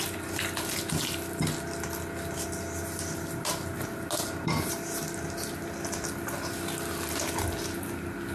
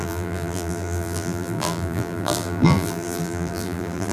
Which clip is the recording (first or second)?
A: first